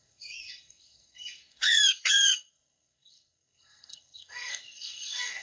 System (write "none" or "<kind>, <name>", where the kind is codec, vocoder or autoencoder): codec, SNAC